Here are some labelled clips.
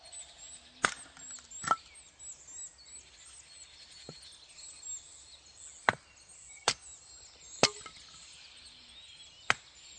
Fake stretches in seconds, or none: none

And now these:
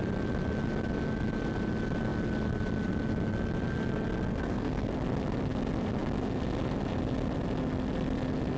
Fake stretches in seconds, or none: 4.3-4.9

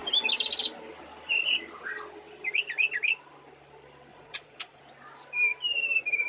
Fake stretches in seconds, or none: 4.1-4.8

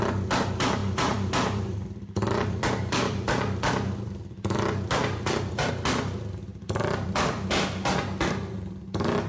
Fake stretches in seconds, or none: 0.8-5.7; 6.5-7.6